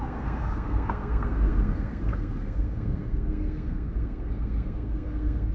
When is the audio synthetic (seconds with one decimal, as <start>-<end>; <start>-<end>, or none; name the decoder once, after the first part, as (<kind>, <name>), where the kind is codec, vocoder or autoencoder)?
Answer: 0.0-5.5 (codec, SNAC)